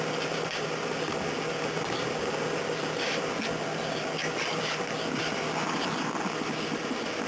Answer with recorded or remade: recorded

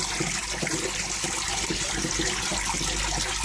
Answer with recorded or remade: recorded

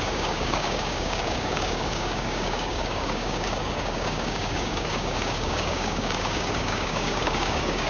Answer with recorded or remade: remade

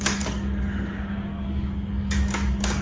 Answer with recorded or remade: remade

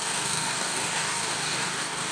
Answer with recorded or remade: remade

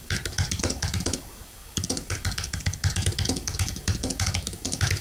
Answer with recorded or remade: remade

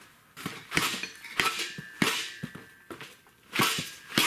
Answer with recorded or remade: recorded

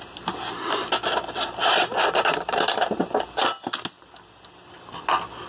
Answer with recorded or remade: recorded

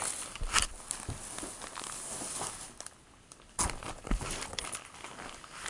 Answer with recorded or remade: recorded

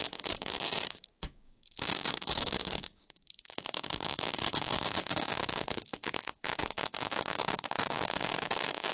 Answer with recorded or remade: remade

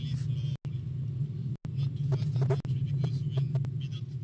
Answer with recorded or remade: recorded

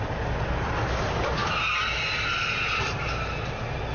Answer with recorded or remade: recorded